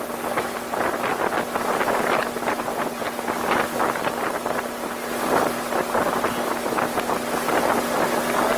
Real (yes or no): yes